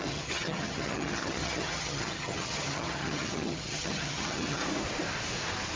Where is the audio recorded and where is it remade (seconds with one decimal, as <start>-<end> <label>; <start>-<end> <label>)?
0.0-4.6 remade; 4.6-5.8 recorded